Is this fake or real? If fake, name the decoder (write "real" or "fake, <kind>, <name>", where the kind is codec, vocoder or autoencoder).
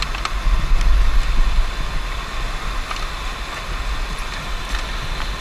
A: real